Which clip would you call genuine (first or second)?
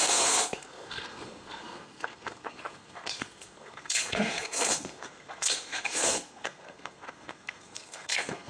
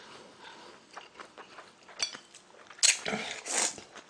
second